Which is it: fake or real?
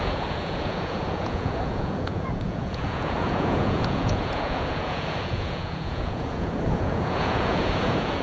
fake